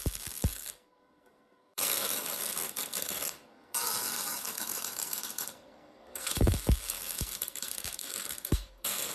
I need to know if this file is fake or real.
fake